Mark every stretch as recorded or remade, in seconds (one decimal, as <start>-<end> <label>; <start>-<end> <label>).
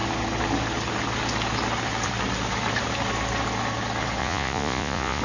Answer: 0.0-4.2 recorded; 4.2-5.2 remade